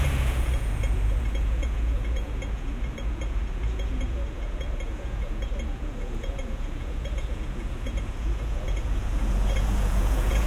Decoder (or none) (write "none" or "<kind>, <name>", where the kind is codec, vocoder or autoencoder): vocoder, Vocos